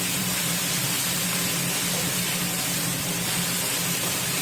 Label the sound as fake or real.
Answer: fake